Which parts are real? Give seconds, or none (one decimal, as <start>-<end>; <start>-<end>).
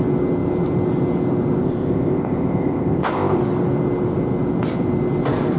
0.0-1.6; 3.4-5.6